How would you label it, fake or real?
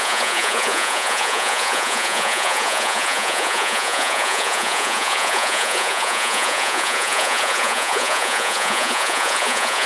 fake